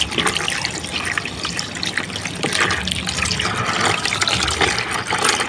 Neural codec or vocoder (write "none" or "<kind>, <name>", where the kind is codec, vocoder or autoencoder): none